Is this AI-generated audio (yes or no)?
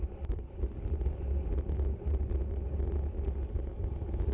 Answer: no